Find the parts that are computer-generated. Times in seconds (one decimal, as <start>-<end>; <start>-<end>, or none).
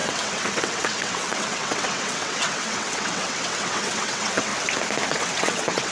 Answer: 0.0-4.5; 5.1-5.9